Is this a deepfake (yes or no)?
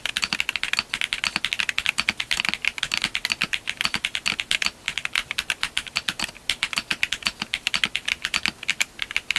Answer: no